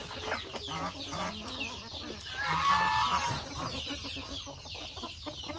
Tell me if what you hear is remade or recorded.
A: recorded